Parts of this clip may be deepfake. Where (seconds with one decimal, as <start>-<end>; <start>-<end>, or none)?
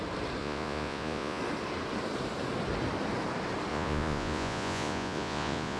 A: 0.4-1.4; 3.7-5.8